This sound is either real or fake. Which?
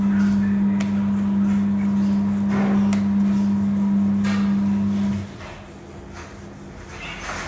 real